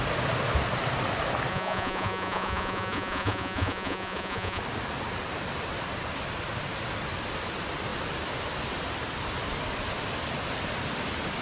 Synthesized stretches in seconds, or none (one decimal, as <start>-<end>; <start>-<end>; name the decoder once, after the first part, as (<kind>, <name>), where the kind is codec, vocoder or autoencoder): 1.5-4.6 (vocoder, Vocos)